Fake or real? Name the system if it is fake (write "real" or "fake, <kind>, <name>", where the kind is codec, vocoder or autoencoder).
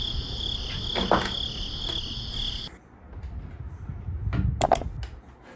real